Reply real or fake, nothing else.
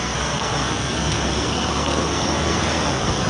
fake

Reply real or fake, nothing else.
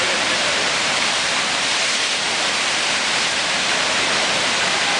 fake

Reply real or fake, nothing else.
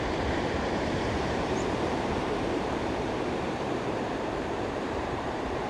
fake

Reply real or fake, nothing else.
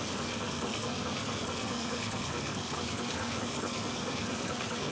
fake